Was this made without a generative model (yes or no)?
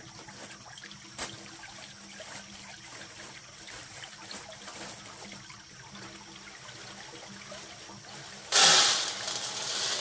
no